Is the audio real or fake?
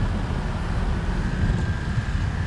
real